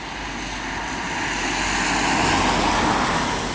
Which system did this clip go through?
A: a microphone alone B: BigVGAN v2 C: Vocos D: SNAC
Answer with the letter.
A